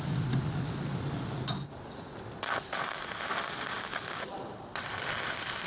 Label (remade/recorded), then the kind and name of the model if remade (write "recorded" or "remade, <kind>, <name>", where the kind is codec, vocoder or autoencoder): recorded